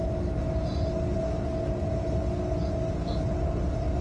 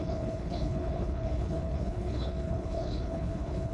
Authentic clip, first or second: first